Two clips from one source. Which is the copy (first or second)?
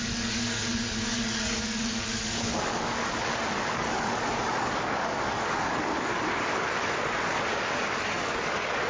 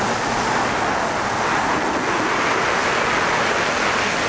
first